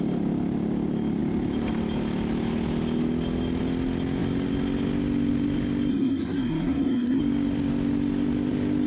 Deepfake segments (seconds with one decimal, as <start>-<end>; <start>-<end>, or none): 5.9-7.2